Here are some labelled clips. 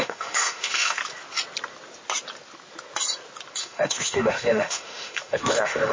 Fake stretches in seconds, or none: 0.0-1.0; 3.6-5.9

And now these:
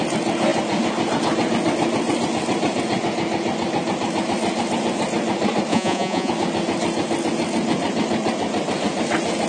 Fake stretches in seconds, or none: 5.7-6.3

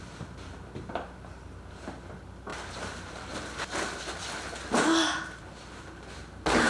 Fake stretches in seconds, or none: 2.5-4.6

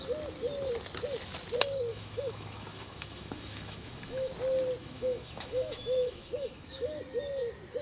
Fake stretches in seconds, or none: 1.9-4.3; 4.8-7.0

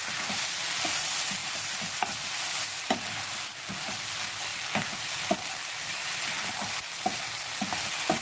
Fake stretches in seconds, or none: none

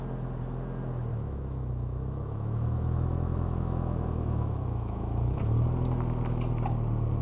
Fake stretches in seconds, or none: 1.1-5.4